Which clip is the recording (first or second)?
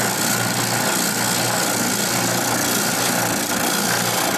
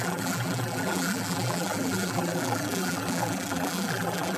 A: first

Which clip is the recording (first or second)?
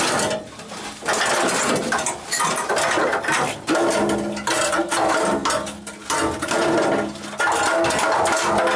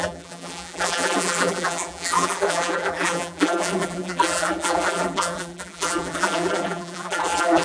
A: first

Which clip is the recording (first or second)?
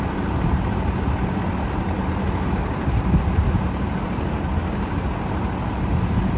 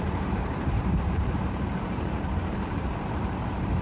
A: first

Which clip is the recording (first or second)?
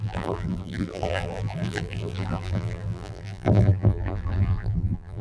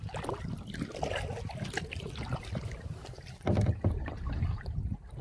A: second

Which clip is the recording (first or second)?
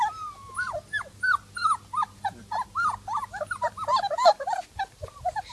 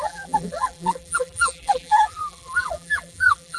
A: first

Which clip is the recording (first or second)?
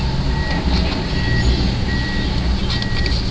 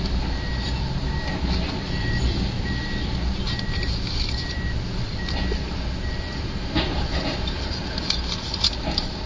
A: first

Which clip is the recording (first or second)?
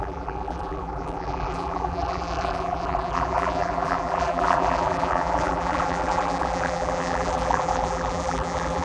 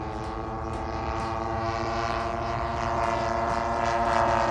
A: second